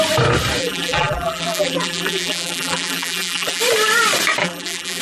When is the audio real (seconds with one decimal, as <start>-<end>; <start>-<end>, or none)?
0.0-0.6; 3.6-4.4